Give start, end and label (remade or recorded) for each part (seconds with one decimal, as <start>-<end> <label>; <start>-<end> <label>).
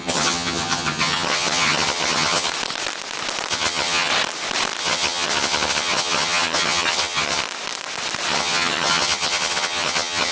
0.0-2.5 remade; 2.5-3.5 recorded; 3.5-4.1 remade; 4.1-4.8 recorded; 4.8-7.4 remade; 7.4-8.3 recorded; 8.3-10.3 remade